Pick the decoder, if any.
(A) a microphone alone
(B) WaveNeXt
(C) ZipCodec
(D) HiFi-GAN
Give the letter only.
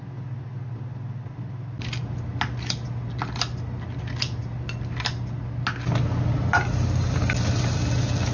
A